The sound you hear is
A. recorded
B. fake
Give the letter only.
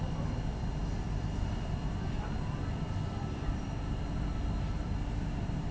B